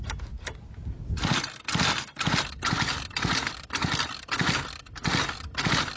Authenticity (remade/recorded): recorded